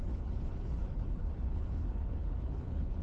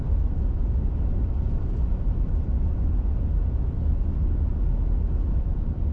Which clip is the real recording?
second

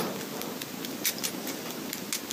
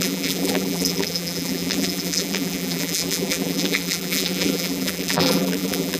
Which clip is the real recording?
first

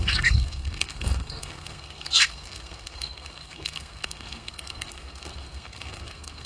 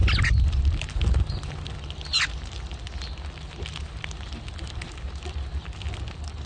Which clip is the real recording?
second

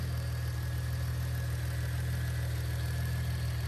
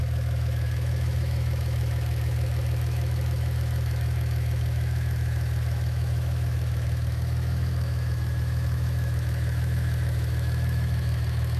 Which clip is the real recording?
first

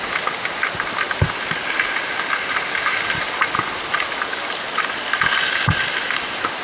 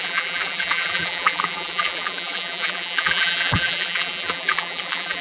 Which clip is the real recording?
first